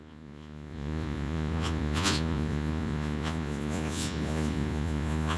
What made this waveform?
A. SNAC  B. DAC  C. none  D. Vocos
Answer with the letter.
D